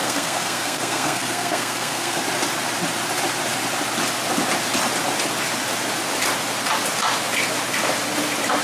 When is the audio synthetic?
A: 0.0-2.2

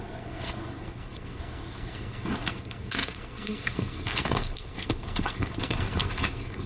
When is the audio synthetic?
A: 0.0-6.7

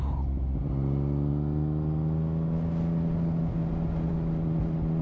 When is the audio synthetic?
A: none

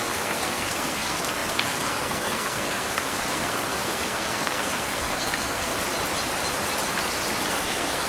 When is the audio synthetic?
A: 0.0-5.7; 7.5-8.1